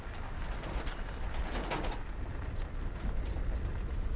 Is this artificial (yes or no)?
no